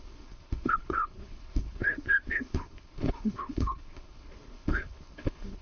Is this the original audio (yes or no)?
no